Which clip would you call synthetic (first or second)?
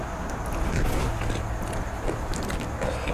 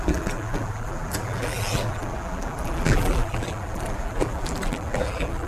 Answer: second